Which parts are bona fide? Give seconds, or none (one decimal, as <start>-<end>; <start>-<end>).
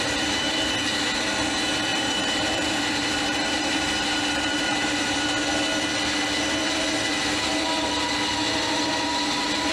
0.0-1.9; 5.3-9.7